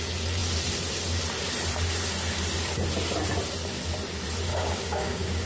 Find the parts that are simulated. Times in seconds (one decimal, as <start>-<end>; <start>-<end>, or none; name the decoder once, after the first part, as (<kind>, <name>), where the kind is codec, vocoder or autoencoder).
4.5-5.5 (codec, DAC)